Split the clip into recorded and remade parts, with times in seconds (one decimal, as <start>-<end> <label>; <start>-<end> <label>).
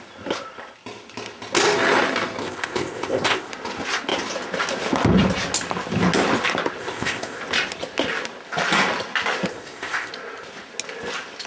0.0-2.4 recorded; 2.4-3.5 remade; 3.5-6.8 recorded; 6.8-7.4 remade; 7.4-9.5 recorded; 9.5-10.1 remade; 10.1-11.5 recorded